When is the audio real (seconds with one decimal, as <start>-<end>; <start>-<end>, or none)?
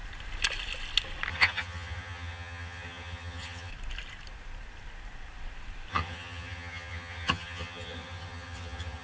0.0-1.3; 3.7-5.9